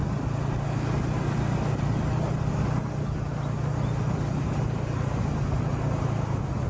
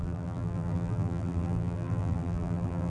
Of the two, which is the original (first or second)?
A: first